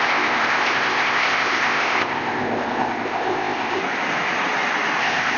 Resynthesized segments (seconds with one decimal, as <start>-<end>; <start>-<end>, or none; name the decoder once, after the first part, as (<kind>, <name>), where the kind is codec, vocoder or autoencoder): 0.0-3.8 (codec, ZipCodec); 5.0-5.4